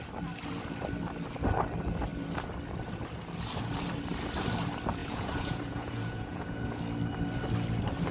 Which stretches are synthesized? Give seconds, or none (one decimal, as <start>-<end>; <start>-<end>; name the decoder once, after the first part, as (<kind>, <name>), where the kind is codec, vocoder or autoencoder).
5.0-6.8 (vocoder, Vocos)